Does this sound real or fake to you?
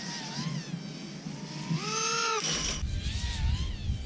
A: real